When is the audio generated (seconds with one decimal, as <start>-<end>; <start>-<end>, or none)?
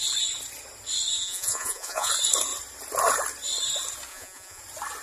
1.2-2.1; 4.1-4.6